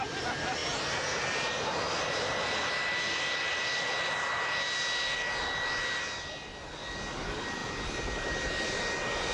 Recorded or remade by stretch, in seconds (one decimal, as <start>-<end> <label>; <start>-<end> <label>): 0.0-9.3 recorded